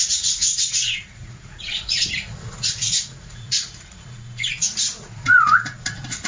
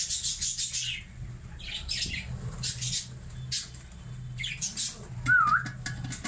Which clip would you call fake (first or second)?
first